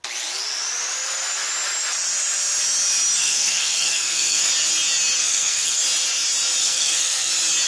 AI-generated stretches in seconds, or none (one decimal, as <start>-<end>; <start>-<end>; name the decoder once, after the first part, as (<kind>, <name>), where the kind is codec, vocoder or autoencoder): 3.2-4.5 (codec, SNAC); 5.2-5.8; 6.6-7.3

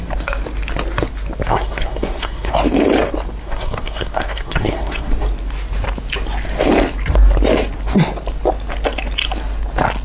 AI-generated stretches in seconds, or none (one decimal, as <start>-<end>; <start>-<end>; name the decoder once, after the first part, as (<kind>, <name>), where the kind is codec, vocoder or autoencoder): 1.5-2.5 (codec, SNAC); 3.4-5.1

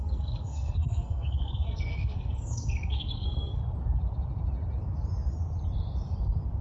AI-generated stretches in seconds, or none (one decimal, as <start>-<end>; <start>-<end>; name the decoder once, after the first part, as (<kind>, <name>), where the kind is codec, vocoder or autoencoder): 0.0-3.6 (codec, SNAC)

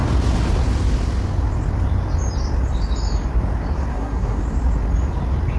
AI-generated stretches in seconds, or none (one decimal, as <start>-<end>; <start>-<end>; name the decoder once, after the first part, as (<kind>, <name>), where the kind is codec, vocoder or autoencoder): 3.9-4.4 (codec, SNAC)